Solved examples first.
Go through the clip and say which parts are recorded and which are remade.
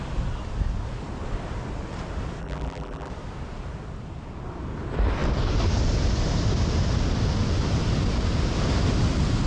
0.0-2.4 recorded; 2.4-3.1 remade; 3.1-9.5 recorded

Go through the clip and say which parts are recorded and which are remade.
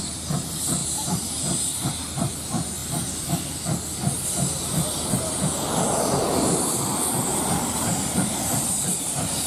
0.0-0.8 recorded; 0.8-1.9 remade; 1.9-7.3 recorded; 7.3-9.1 remade; 9.1-9.5 recorded